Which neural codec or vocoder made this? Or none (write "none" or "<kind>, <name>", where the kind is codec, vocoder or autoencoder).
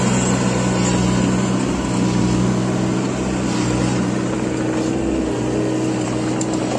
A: none